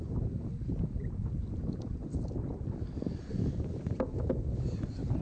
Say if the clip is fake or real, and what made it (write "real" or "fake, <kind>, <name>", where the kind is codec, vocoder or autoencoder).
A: real